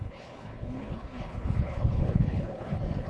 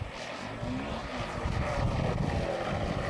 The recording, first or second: second